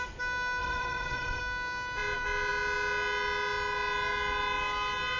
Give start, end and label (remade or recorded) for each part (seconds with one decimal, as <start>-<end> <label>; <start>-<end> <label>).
0.0-0.6 recorded; 0.6-1.4 remade; 1.4-5.2 recorded